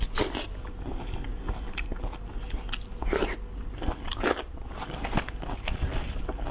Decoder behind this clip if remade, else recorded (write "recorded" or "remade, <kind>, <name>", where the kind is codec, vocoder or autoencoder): recorded